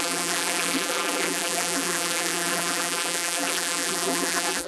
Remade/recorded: remade